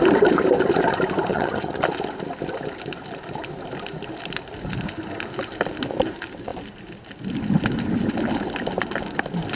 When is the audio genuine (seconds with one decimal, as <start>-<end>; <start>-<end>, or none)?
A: 0.0-1.3; 1.8-9.6

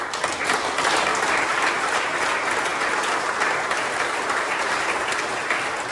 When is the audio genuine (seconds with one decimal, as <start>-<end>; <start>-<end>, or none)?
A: 0.0-1.1; 2.1-2.7; 5.0-5.9